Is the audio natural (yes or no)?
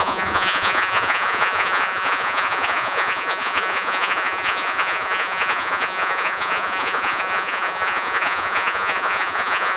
no